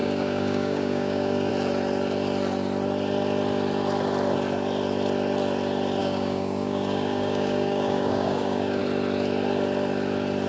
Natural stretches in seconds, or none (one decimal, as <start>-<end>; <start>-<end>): 1.5-6.0; 8.8-10.5